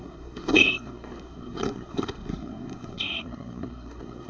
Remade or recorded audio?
remade